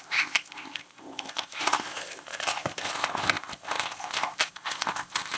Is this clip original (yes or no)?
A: no